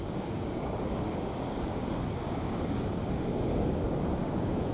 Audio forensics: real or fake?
fake